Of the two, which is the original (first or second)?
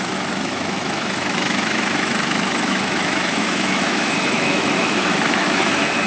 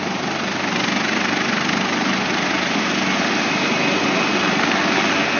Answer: second